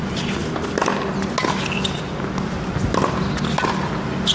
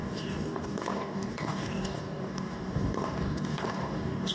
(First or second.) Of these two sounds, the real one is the first